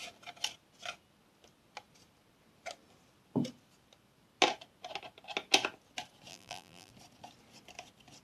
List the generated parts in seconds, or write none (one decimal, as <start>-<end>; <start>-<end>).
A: 6.3-6.9